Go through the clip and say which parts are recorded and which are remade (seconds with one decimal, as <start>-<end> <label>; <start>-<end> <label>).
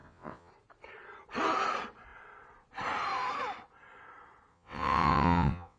0.0-0.5 remade; 0.5-4.5 recorded; 4.5-5.8 remade